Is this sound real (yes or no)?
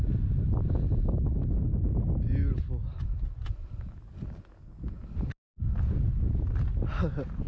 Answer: yes